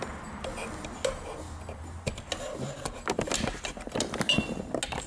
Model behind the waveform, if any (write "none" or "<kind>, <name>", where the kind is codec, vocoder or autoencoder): none